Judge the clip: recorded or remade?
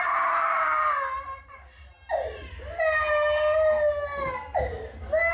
recorded